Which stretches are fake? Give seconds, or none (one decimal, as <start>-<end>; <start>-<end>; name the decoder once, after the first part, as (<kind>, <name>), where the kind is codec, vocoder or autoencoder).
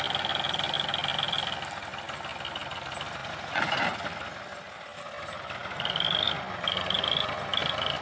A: 3.2-3.7 (vocoder, Vocos)